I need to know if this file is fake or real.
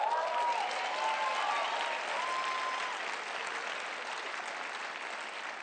real